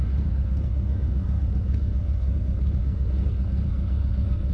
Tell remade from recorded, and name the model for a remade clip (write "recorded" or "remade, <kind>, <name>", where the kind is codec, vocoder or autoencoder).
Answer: remade, codec, SNAC